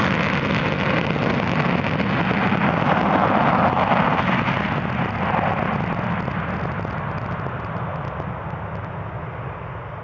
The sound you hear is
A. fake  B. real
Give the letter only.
B